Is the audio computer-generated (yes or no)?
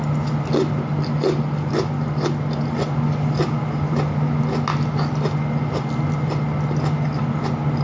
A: no